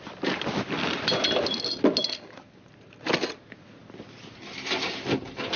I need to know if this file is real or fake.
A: real